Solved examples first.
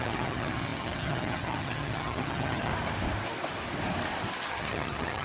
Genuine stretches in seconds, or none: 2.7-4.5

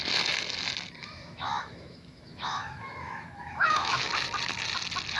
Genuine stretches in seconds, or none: 0.0-1.0; 4.1-5.2